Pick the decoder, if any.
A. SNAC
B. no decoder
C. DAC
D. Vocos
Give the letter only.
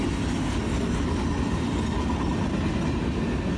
B